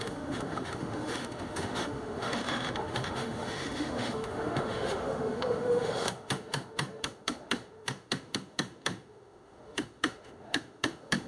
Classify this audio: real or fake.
fake